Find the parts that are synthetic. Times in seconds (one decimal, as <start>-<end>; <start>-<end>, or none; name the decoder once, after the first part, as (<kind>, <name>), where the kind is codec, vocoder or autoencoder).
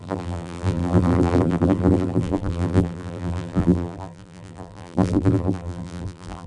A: 0.0-6.5 (vocoder, BigVGAN v2)